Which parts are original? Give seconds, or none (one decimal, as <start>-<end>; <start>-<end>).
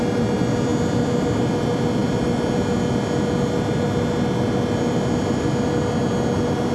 0.0-6.7